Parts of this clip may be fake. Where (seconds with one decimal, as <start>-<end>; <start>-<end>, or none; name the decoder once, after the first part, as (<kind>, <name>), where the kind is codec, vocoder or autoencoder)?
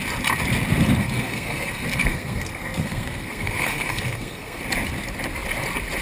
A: 1.0-4.6 (codec, SNAC)